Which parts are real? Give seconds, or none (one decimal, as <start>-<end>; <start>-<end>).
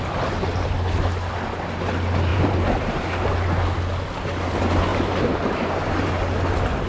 0.0-2.3; 3.0-4.9; 6.1-6.9